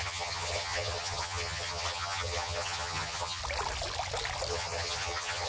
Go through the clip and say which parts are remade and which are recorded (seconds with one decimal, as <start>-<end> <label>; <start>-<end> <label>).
0.0-3.4 remade; 3.4-4.5 recorded; 4.5-5.5 remade